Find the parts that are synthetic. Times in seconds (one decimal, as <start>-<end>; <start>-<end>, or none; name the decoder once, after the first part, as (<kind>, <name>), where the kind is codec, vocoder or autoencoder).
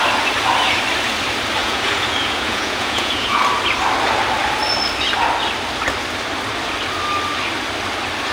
1.6-3.4 (vocoder, Vocos)